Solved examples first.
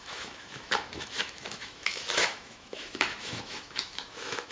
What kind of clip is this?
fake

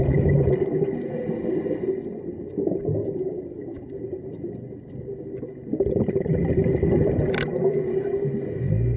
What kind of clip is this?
real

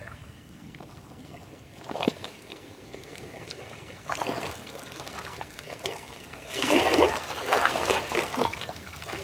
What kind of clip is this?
fake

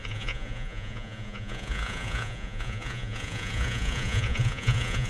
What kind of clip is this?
fake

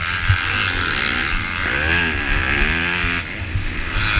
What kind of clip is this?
real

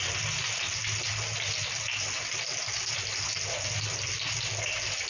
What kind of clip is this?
real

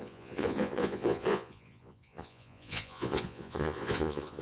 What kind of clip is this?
fake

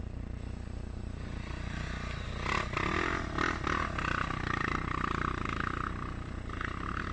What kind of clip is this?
real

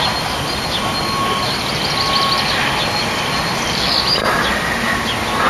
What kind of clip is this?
real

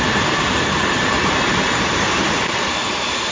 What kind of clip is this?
fake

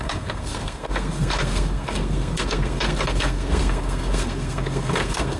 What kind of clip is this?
fake